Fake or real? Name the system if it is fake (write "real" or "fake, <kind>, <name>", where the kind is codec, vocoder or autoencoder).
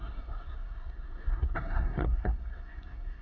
fake, codec, SNAC